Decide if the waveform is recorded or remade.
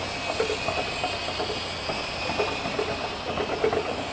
recorded